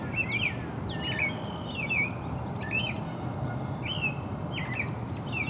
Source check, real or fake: real